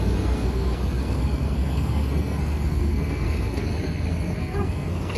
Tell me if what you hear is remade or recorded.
remade